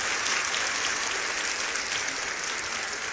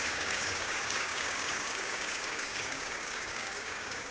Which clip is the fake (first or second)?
second